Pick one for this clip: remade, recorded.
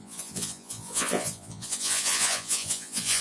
remade